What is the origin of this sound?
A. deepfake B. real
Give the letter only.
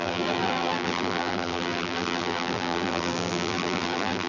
A